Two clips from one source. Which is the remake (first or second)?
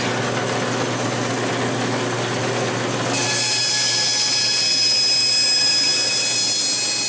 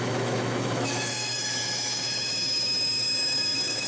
second